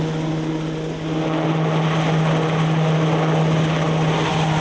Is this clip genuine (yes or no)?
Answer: yes